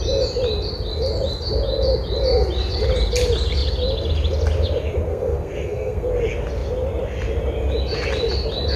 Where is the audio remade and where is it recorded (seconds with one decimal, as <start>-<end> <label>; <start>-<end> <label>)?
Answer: 0.0-5.1 recorded; 5.1-6.1 remade; 6.1-8.8 recorded